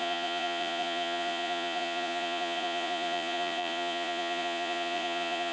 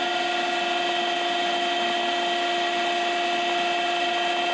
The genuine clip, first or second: second